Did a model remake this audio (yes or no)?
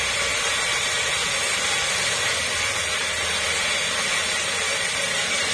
no